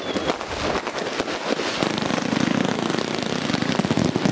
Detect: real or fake real